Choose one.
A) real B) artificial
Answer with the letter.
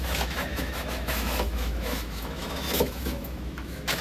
B